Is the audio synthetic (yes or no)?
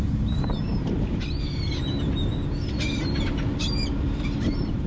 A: yes